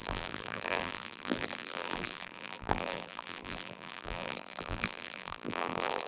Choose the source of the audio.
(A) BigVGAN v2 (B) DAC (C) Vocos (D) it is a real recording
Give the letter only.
A